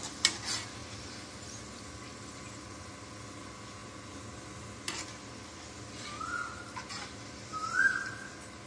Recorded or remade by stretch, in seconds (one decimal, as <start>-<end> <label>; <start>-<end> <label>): 0.0-8.7 recorded